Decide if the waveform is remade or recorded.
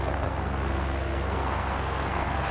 remade